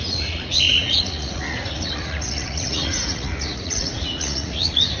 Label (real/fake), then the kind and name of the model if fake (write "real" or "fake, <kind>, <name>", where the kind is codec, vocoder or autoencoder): fake, vocoder, Vocos